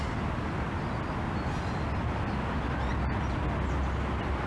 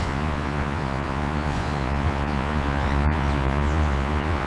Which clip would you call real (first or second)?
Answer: first